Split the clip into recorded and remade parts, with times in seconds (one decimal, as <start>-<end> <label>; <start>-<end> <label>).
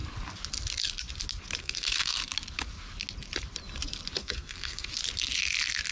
0.0-1.6 recorded; 1.6-2.2 remade; 2.2-4.2 recorded; 4.2-4.9 remade; 4.9-5.9 recorded